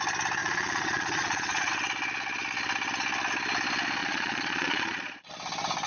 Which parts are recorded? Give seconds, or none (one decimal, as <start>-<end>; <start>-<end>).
0.0-0.4; 1.7-4.0; 5.3-5.9